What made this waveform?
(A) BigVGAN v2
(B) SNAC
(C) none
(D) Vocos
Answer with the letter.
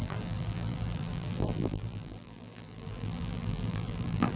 A